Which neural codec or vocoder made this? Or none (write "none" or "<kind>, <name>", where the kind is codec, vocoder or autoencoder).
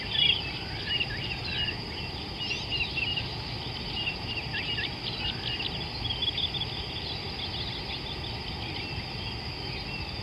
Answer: none